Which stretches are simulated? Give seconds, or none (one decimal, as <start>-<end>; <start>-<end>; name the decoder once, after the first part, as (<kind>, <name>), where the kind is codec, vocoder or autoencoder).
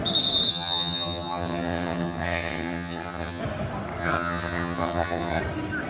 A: 0.5-3.4 (vocoder, HiFi-GAN); 4.0-5.4